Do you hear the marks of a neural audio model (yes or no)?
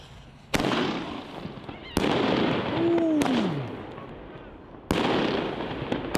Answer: no